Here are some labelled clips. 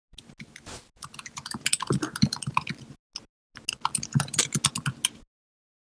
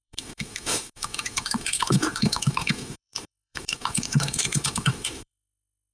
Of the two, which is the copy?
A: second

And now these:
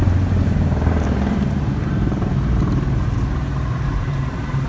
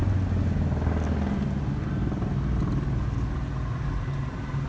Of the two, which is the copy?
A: first